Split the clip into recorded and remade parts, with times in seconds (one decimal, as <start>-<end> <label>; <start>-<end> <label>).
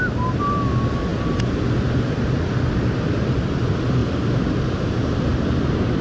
0.0-4.0 recorded; 4.0-6.0 remade